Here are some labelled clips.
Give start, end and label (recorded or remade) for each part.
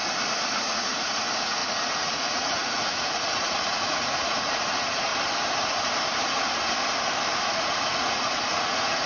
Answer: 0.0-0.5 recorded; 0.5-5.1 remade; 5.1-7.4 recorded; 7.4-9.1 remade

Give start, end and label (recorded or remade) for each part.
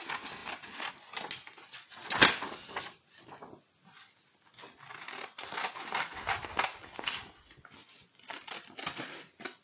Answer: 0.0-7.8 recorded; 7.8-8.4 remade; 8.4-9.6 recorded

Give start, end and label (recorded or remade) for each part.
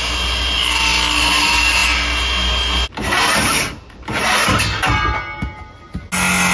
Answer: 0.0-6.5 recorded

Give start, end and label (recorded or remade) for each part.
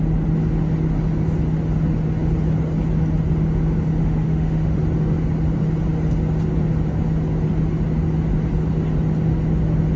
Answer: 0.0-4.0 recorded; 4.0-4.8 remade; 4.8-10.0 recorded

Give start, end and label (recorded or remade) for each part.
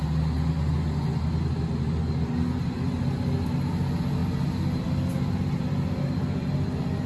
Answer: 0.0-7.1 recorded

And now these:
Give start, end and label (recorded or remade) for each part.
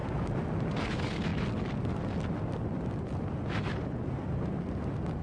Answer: 0.0-5.2 recorded